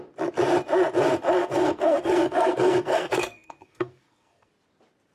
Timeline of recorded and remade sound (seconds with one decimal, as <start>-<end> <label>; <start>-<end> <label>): 0.0-1.4 recorded; 1.4-4.5 remade; 4.5-5.1 recorded

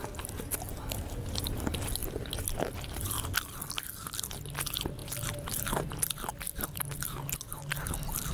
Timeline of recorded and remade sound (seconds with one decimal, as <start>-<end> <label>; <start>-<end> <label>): 0.0-8.3 recorded

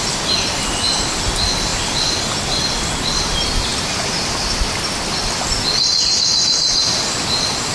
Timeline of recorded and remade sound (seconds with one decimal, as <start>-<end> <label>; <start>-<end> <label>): 0.0-7.7 recorded

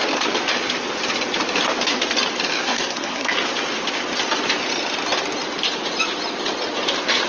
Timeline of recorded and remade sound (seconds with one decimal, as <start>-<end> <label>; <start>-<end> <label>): 0.0-2.6 recorded; 2.6-3.3 remade; 3.3-7.3 recorded

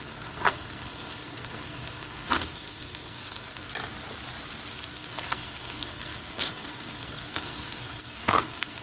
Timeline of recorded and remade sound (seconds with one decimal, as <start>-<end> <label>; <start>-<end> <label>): 0.0-3.7 remade; 3.7-4.7 recorded; 4.7-8.8 remade

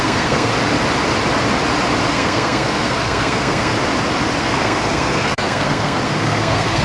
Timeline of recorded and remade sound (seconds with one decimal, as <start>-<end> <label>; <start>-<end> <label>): 0.0-0.5 remade; 0.5-2.1 recorded; 2.1-3.7 remade; 3.7-4.4 recorded; 4.4-6.8 remade